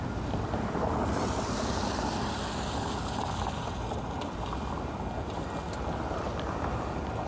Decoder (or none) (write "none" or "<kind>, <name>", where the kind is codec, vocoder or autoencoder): none